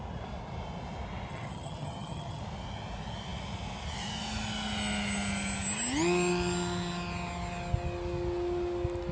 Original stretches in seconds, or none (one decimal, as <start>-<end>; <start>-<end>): 0.0-1.3; 2.4-9.1